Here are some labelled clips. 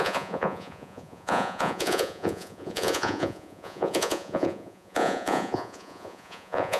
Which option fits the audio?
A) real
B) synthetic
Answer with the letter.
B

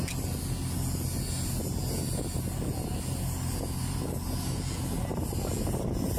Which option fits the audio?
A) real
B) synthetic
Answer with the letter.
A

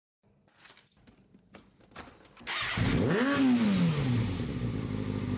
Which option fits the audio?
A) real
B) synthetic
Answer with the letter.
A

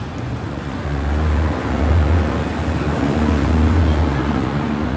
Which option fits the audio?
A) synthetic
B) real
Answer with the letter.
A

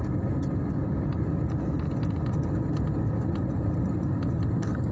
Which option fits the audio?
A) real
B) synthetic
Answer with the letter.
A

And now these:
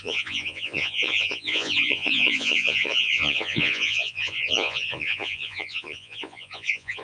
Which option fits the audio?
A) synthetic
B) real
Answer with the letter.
A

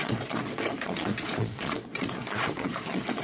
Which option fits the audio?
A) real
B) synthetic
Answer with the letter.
B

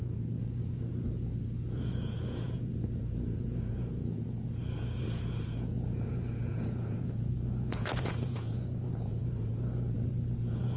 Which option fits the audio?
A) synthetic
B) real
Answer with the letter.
A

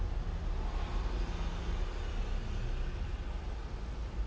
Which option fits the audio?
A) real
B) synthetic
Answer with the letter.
A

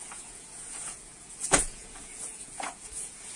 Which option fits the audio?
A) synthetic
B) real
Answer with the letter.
A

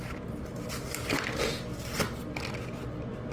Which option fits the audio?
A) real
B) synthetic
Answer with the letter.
A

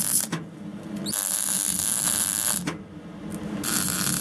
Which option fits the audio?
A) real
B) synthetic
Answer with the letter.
A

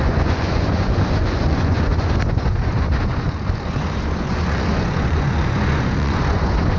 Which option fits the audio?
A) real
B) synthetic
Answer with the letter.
B